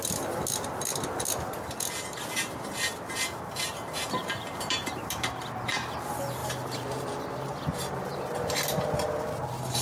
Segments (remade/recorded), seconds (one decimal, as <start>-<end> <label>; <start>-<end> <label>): 0.0-4.2 recorded; 4.2-5.4 remade; 5.4-6.4 recorded; 6.4-9.8 remade